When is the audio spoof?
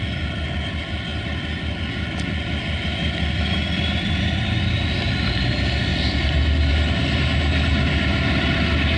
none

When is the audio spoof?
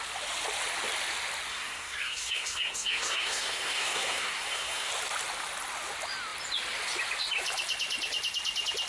1.5-4.9 (codec, SNAC)